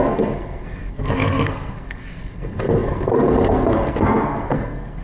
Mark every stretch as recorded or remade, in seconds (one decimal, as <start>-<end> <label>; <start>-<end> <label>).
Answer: 0.0-5.0 remade